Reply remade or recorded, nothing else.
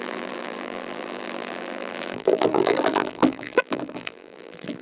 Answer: remade